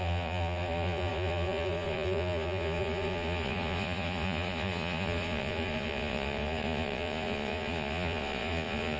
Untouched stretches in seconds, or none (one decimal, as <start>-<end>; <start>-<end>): none